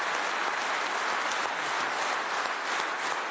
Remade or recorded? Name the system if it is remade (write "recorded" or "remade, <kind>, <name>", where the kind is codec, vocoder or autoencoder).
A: recorded